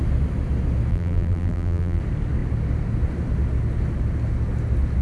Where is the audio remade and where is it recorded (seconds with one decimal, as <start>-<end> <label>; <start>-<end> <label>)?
0.0-0.9 recorded; 0.9-2.0 remade; 2.0-5.0 recorded